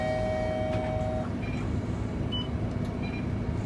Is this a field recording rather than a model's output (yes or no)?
yes